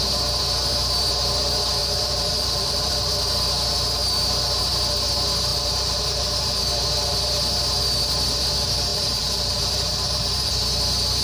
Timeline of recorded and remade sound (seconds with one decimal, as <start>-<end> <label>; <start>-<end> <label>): 0.0-1.8 recorded; 1.8-2.9 remade; 2.9-5.5 recorded; 5.5-6.7 remade; 6.7-8.9 recorded; 8.9-10.5 remade; 10.5-11.2 recorded